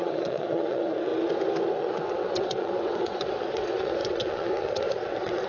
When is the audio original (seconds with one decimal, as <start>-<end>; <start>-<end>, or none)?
1.1-1.8